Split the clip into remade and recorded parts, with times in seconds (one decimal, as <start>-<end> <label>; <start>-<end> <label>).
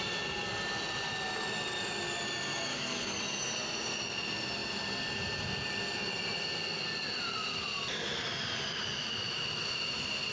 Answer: 0.0-2.7 recorded; 2.7-3.2 remade; 3.2-10.3 recorded